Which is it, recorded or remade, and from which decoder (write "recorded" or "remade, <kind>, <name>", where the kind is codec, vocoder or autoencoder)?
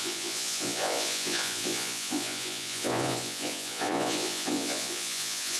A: remade, vocoder, Vocos